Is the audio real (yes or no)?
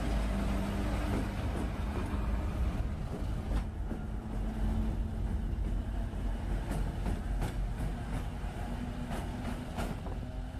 yes